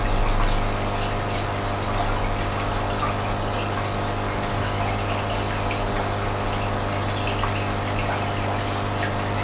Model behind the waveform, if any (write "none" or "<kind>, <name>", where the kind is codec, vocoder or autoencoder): none